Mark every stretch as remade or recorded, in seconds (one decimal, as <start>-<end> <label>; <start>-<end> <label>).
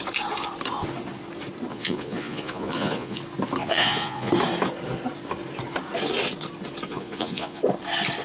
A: 0.0-1.7 recorded; 1.7-3.2 remade; 3.2-3.6 recorded; 3.6-4.3 remade; 4.3-6.9 recorded; 6.9-7.6 remade; 7.6-8.2 recorded